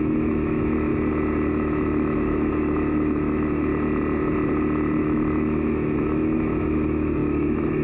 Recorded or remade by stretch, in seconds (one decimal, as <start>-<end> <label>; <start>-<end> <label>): 0.0-0.9 remade; 0.9-1.5 recorded; 1.5-3.7 remade; 3.7-5.0 recorded; 5.0-7.8 remade